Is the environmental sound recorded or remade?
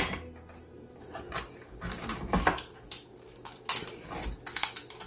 recorded